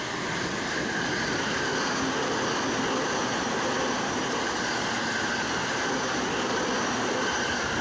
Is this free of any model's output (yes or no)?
yes